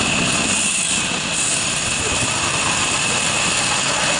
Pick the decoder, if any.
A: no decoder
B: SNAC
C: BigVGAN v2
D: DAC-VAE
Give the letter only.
C